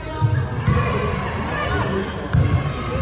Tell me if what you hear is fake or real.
real